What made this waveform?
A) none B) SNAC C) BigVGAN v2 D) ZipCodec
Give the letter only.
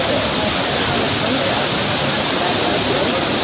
A